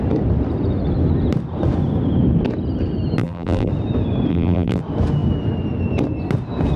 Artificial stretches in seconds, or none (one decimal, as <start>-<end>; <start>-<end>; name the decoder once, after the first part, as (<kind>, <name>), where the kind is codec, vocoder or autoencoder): 3.2-3.7 (vocoder, BigVGAN v2); 4.3-4.8